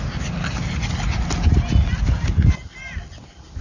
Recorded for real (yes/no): yes